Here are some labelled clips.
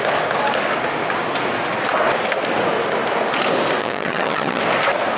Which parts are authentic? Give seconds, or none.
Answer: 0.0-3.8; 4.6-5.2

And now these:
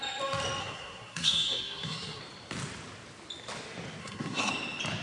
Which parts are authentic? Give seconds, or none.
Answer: 0.0-0.6; 2.2-4.0; 4.5-5.0

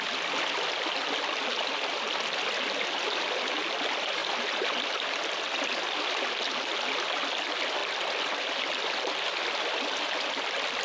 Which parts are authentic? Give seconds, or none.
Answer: 0.0-4.2; 6.3-7.8; 8.4-10.8

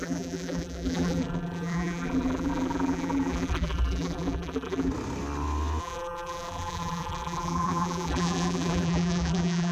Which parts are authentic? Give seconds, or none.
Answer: 4.9-5.8

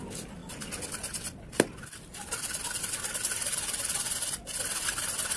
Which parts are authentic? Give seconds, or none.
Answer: 0.4-2.8; 3.5-4.6

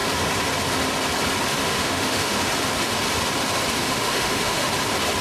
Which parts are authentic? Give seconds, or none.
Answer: 0.0-1.6; 2.5-3.8; 4.7-5.2

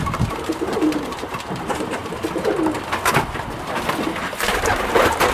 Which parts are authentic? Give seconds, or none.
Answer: 2.0-4.8

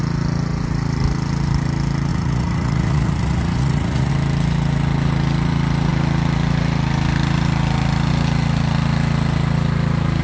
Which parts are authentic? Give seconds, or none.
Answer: 0.0-2.1; 4.1-10.2